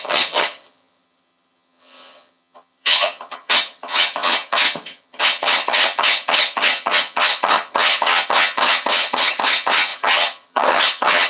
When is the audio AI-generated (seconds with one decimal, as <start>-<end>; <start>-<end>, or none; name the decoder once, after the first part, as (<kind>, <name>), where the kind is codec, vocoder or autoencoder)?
0.0-11.3 (vocoder, HiFi-GAN)